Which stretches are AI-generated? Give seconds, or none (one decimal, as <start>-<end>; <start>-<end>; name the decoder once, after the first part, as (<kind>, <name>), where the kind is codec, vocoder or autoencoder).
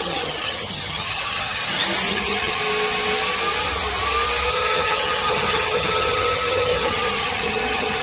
0.0-1.6 (vocoder, HiFi-GAN); 2.1-2.6; 4.5-8.0